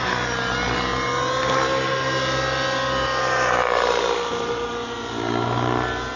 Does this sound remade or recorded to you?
recorded